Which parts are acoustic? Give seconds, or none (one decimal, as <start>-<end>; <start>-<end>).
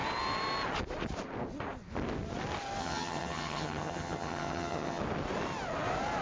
0.0-2.8; 5.0-6.2